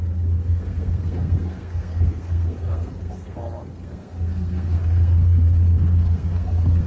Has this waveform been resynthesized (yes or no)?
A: yes